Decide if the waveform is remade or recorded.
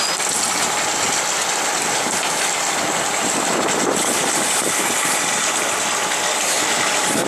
recorded